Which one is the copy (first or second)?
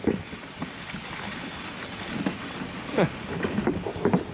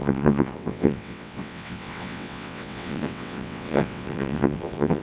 second